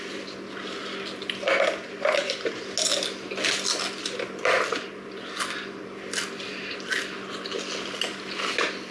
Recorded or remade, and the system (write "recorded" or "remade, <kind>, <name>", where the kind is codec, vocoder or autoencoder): recorded